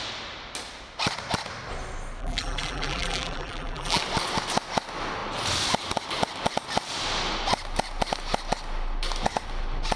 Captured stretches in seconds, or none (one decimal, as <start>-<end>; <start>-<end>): 0.0-2.2; 4.0-10.0